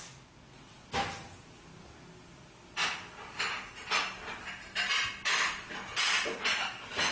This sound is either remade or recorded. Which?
recorded